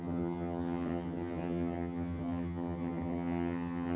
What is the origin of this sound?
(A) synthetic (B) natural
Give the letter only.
A